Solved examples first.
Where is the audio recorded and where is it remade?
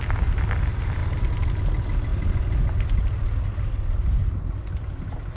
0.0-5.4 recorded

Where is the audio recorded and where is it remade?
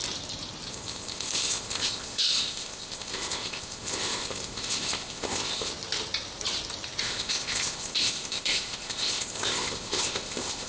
0.0-0.7 recorded; 0.7-5.7 remade; 5.7-7.0 recorded; 7.0-10.7 remade